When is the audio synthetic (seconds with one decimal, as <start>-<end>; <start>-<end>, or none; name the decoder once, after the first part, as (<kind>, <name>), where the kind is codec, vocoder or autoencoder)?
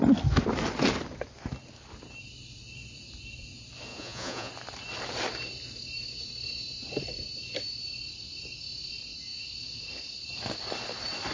3.9-4.5 (vocoder, Vocos)